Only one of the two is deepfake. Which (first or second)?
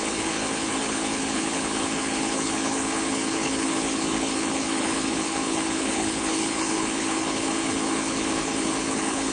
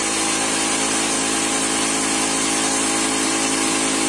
first